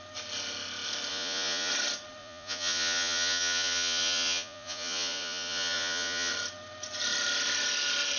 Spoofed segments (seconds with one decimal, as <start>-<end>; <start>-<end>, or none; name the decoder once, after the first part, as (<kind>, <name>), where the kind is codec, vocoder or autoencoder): 1.1-1.7 (vocoder, Vocos); 2.2-6.3